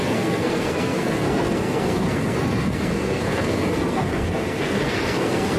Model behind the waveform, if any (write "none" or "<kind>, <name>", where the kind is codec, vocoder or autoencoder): codec, SNAC